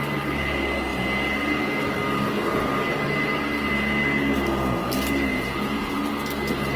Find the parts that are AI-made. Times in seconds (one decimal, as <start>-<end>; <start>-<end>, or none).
5.3-6.0